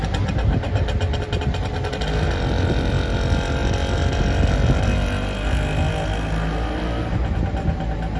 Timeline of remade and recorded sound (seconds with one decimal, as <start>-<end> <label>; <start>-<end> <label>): 0.0-8.2 recorded